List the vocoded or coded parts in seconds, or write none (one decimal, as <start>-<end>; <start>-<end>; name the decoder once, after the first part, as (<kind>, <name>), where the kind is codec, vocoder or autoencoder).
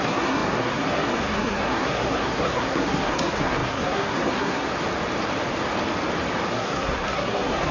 0.0-4.7 (codec, SNAC); 6.5-7.7